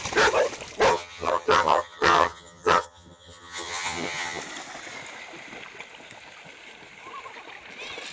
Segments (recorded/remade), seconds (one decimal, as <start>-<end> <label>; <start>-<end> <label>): 0.0-0.9 recorded; 0.9-4.4 remade; 4.4-8.1 recorded